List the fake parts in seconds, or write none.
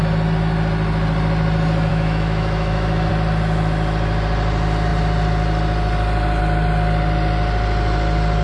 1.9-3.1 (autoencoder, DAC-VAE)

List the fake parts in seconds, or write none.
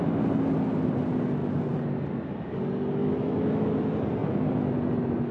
3.0-3.7 (autoencoder, DAC-VAE)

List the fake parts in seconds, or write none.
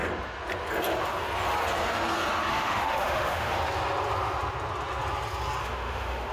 2.5-3.6 (autoencoder, DAC-VAE); 5.6-6.3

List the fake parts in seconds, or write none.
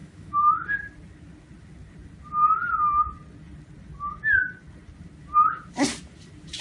0.0-0.5 (autoencoder, DAC-VAE)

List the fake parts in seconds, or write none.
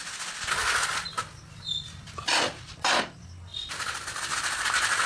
none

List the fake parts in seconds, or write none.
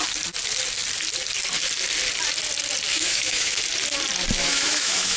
2.9-3.6 (autoencoder, DAC-VAE); 4.4-5.2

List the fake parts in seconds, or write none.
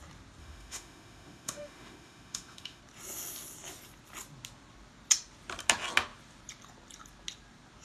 0.4-2.8 (autoencoder, DAC-VAE)